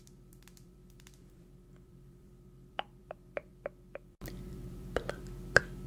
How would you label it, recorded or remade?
remade